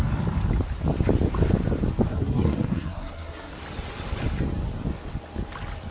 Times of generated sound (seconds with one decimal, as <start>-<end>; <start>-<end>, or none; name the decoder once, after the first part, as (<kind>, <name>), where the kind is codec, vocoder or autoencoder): 2.1-3.5 (codec, SNAC)